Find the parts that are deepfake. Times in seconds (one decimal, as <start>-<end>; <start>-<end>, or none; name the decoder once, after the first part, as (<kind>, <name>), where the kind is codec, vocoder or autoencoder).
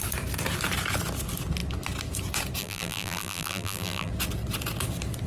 2.6-4.1 (vocoder, BigVGAN v2)